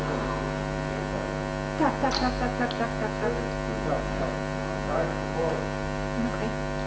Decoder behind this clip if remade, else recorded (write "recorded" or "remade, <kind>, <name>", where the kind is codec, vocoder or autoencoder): recorded